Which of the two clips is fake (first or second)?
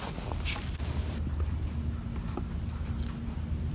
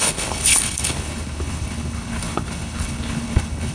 second